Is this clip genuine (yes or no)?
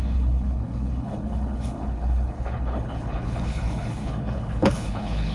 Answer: no